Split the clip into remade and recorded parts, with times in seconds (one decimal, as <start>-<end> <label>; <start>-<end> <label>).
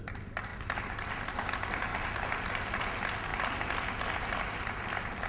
0.0-1.9 recorded; 1.9-2.5 remade; 2.5-5.3 recorded